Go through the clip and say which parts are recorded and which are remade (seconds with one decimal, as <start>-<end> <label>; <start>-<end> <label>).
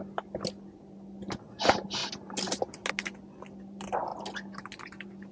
0.0-5.3 recorded